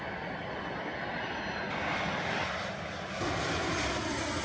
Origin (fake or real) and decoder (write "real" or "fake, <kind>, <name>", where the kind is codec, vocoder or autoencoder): real